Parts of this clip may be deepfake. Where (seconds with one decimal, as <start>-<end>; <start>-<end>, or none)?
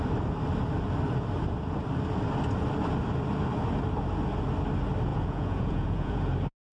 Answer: 5.1-6.2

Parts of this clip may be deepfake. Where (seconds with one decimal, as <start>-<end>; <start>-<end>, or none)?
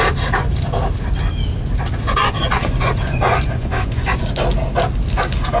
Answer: 2.2-4.3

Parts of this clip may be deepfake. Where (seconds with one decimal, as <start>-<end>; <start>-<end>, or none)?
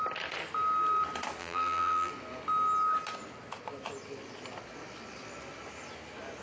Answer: 1.4-2.1